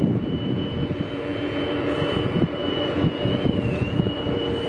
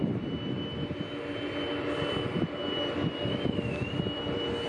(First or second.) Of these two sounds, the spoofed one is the first